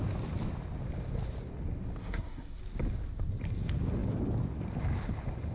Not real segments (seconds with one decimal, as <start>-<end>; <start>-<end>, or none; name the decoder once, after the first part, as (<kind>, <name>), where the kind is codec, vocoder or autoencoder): 2.0-2.6 (codec, SNAC)